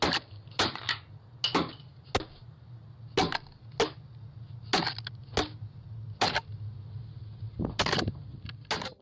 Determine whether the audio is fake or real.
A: real